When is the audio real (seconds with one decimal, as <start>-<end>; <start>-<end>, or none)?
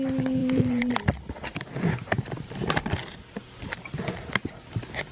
0.0-0.4; 0.9-5.1